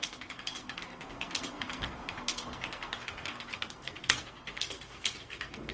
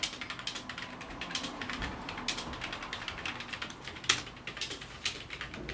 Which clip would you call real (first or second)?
second